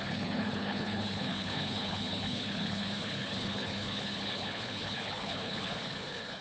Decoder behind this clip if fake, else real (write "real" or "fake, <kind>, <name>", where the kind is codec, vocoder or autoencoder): fake, codec, HILCodec